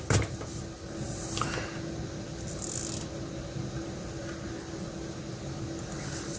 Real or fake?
real